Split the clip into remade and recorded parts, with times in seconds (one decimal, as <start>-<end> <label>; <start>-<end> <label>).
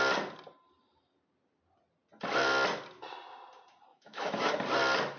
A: 0.0-3.9 recorded; 3.9-4.5 remade; 4.5-5.2 recorded